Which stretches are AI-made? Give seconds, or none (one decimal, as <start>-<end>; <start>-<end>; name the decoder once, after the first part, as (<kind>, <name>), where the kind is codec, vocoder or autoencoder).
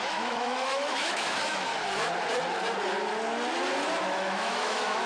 0.0-1.7 (autoencoder, DAC-VAE); 4.0-5.1